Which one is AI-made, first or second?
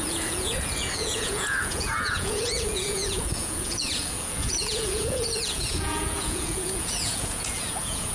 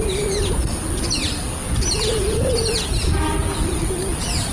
first